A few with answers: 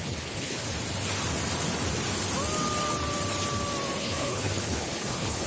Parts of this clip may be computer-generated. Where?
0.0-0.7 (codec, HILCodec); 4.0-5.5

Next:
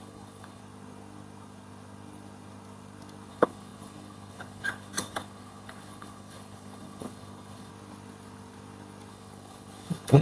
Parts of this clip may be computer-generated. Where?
0.0-0.6 (codec, HILCodec); 3.3-7.7; 9.1-10.2